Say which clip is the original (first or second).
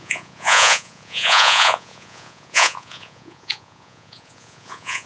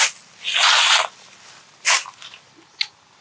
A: second